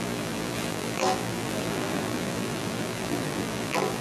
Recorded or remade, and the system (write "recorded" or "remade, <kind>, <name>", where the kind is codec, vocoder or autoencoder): remade, vocoder, BigVGAN v2